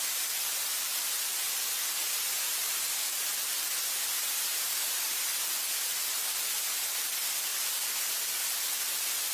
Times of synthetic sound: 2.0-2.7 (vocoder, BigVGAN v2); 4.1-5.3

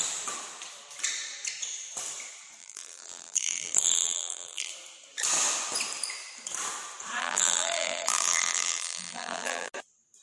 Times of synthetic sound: 2.6-4.7 (vocoder, BigVGAN v2); 7.2-9.7